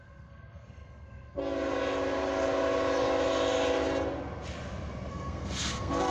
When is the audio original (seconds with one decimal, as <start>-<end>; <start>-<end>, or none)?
1.4-5.1